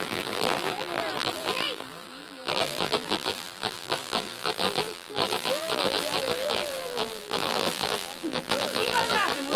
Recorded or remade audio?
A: remade